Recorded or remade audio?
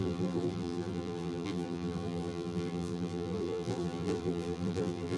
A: remade